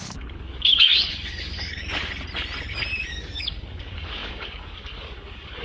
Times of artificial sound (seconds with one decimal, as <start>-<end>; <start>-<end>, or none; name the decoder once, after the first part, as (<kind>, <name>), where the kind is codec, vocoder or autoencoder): 0.0-2.0 (codec, DAC); 3.1-5.6